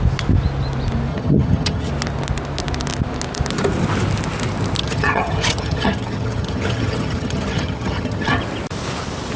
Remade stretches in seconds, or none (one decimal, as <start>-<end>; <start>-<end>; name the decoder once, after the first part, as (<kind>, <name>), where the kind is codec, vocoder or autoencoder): 1.1-1.9 (vocoder, HiFi-GAN); 4.8-8.4

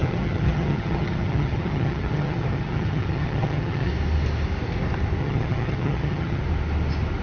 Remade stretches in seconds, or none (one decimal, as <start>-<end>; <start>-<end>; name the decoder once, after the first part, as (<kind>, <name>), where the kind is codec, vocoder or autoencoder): 0.0-3.9 (vocoder, HiFi-GAN); 5.2-6.4

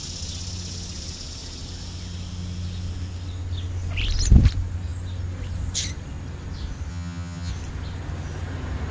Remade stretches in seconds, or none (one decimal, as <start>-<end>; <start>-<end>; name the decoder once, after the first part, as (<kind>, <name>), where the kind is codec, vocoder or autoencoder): 6.9-7.5 (vocoder, HiFi-GAN)

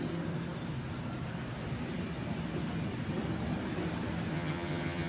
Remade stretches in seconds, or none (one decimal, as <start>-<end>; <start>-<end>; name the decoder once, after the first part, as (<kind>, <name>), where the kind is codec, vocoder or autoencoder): 4.3-5.1 (vocoder, HiFi-GAN)